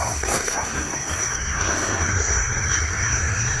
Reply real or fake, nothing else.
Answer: fake